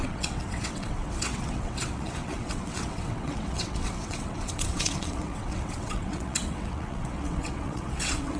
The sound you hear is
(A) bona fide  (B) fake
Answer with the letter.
B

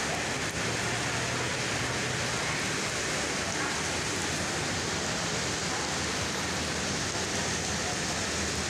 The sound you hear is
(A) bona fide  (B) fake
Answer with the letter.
A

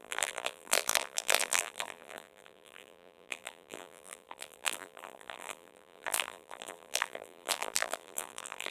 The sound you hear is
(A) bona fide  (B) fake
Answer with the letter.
B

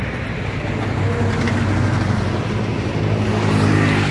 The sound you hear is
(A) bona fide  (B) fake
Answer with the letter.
A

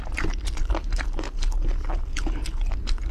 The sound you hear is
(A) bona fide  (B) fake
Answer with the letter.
A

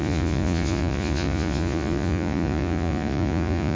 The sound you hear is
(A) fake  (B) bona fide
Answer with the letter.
A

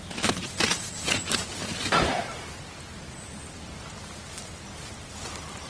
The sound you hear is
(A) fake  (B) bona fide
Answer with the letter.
B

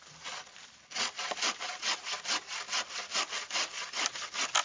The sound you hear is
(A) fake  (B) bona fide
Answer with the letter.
B